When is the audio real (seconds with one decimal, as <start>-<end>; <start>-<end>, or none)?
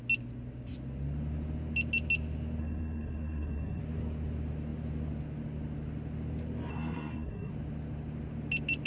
0.0-2.6; 3.8-6.7; 7.5-8.9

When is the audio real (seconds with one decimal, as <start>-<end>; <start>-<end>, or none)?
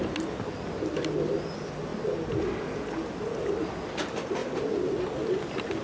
0.0-5.8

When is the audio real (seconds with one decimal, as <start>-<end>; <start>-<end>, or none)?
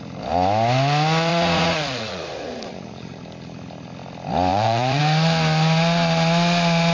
0.0-1.3; 3.2-4.5; 5.0-6.9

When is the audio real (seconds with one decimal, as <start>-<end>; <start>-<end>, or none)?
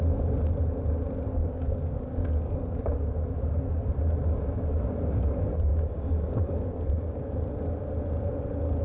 0.0-1.3; 3.1-5.7; 7.3-8.8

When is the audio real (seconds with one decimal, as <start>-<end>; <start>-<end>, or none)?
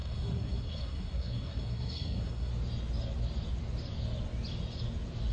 2.5-5.3